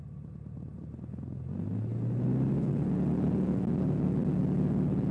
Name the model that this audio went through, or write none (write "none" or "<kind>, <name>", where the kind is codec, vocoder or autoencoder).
none